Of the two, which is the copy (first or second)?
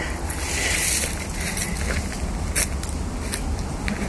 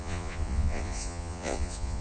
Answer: second